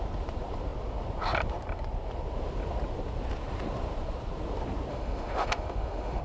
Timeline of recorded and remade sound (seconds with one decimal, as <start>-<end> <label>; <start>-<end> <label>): 0.0-4.9 recorded; 4.9-6.2 remade